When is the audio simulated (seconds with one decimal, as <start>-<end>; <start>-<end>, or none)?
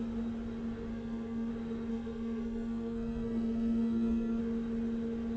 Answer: 0.9-1.5; 1.9-4.4